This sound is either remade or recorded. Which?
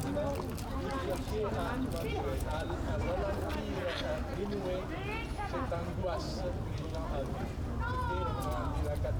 recorded